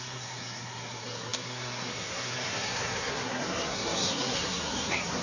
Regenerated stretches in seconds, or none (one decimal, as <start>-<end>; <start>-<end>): 0.0-5.2